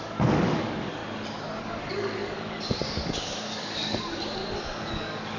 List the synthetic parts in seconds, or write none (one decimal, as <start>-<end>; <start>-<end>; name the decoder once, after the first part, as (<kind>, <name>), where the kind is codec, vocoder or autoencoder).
0.0-1.0 (codec, DAC); 1.6-4.4; 4.9-5.4